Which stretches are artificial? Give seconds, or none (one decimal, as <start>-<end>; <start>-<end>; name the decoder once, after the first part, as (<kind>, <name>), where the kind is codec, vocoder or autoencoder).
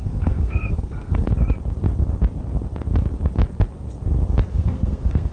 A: 0.0-1.3 (codec, SNAC); 4.5-5.3